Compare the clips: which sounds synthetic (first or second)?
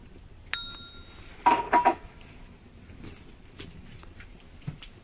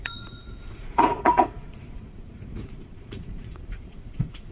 second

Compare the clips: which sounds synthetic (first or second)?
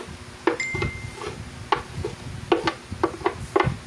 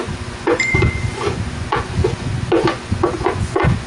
second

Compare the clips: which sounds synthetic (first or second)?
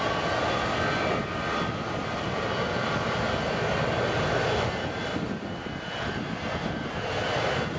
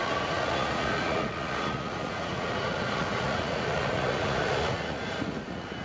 second